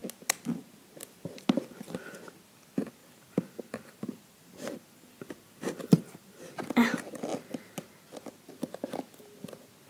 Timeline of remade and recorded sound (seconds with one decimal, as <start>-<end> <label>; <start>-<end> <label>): 0.0-3.0 recorded; 3.0-6.4 remade; 6.4-9.9 recorded